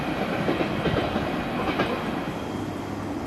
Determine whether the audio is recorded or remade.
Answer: recorded